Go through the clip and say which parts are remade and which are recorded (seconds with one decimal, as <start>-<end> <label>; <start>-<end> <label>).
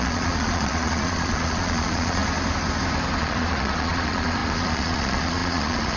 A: 0.0-2.2 remade; 2.2-3.2 recorded; 3.2-6.0 remade